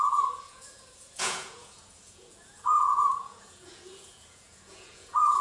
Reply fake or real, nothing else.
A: fake